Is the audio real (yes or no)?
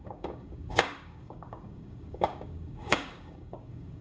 no